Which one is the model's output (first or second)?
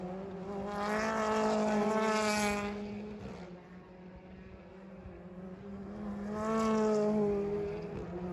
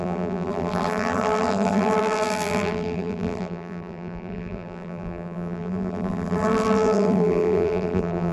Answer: second